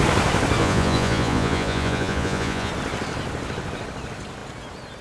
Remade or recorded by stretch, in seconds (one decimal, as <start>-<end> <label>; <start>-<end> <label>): 0.0-0.6 recorded; 0.6-2.7 remade; 2.7-5.0 recorded